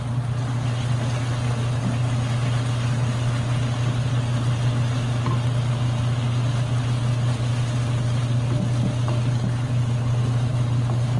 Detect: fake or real real